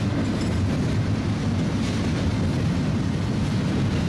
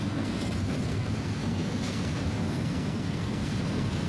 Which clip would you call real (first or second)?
first